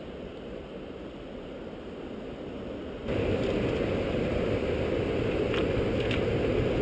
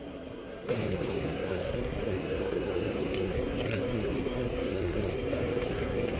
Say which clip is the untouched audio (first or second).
first